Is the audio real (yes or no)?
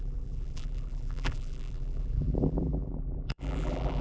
no